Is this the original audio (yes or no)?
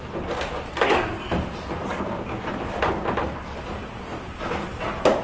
yes